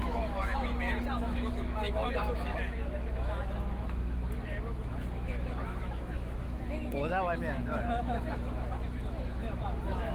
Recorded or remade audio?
remade